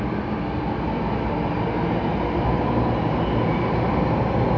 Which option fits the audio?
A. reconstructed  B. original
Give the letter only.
B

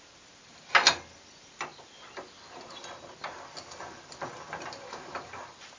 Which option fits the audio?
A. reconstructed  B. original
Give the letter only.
B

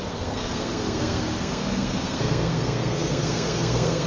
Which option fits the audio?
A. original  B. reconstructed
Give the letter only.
B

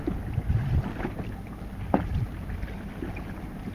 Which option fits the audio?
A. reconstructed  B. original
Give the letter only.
B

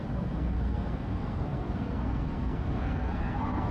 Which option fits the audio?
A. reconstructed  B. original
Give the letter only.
A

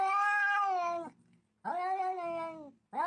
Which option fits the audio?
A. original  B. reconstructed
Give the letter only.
A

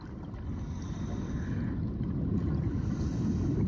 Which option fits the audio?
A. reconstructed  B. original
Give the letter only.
B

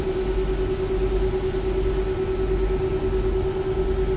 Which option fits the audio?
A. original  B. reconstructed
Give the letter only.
A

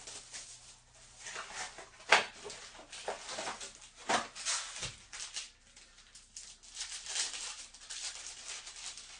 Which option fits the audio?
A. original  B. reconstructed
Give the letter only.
A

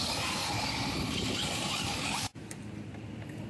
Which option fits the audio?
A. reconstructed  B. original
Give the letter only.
B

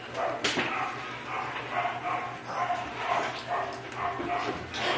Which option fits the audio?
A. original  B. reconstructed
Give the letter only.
A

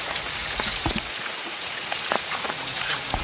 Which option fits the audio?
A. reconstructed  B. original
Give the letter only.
A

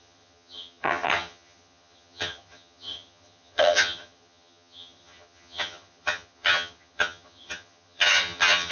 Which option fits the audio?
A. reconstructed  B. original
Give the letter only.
A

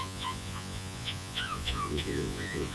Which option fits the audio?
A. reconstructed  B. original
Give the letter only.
A